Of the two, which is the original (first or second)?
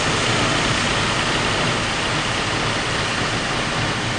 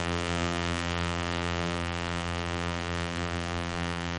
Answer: first